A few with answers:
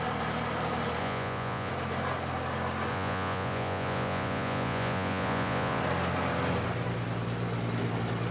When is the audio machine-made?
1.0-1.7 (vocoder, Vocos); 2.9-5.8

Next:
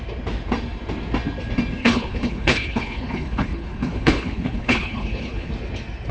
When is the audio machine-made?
1.8-5.5 (codec, HILCodec)

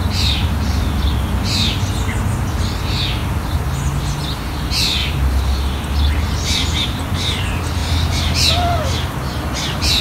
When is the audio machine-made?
none

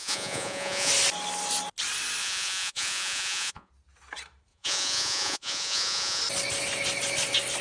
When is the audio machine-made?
0.0-0.9 (vocoder, Vocos); 2.2-3.7; 4.5-6.2

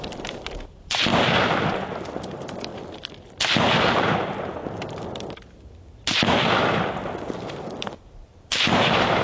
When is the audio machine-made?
0.0-1.1 (vocoder, BigVGAN v2); 1.8-2.7; 3.6-4.6; 6.6-9.2